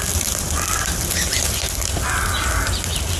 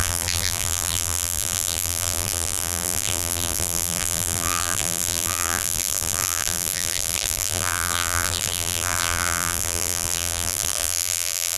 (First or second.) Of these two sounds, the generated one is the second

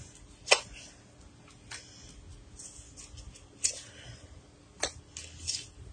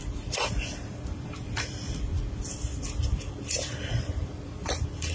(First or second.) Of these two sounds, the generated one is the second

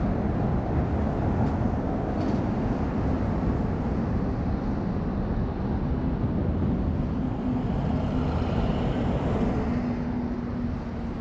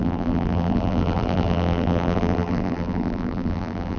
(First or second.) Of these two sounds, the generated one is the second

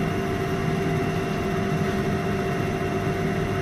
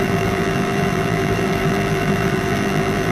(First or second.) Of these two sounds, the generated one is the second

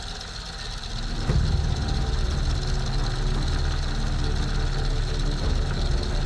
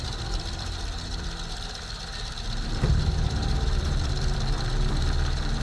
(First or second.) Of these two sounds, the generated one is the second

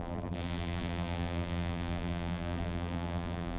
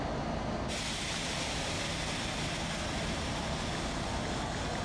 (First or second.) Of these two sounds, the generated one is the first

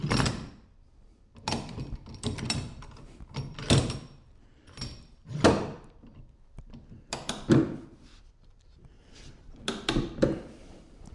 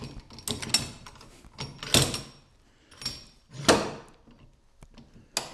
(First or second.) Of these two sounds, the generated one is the first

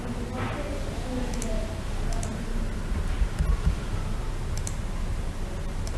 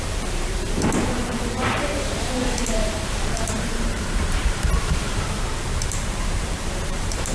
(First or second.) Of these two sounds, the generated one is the second